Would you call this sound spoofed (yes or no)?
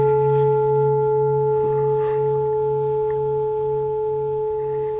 no